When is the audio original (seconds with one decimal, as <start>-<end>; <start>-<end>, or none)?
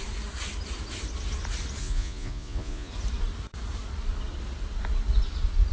0.0-1.8; 2.9-5.7